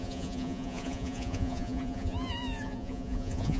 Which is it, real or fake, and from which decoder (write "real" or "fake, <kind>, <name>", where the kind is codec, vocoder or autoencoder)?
fake, vocoder, Vocos